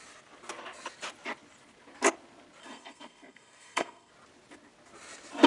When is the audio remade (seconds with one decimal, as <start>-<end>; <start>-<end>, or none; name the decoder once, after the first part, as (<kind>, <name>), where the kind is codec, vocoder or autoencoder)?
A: 2.6-4.1 (codec, SNAC)

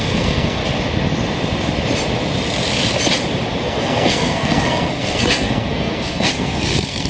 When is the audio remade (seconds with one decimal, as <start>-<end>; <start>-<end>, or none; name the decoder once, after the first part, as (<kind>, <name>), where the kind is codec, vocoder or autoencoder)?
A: 0.0-0.6 (codec, SNAC); 3.6-7.1